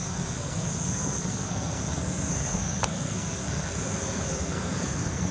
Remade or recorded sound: remade